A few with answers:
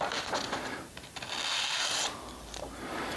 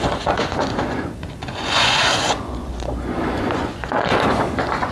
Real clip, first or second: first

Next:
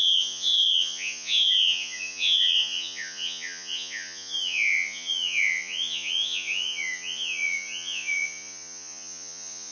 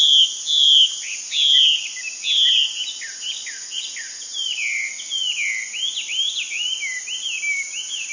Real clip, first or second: second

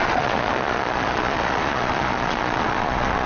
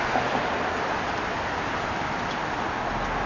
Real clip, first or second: second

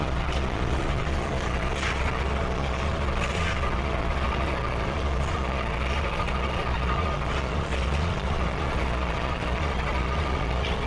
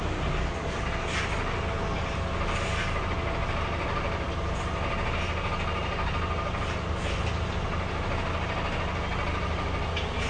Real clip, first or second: second